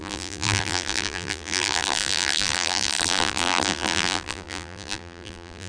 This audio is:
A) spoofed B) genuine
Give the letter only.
A